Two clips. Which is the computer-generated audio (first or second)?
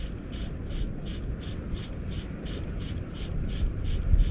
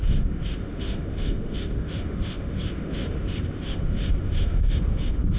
second